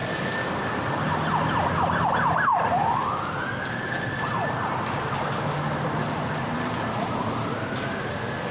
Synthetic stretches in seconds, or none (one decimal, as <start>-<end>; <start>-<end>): 0.0-0.9; 2.5-3.9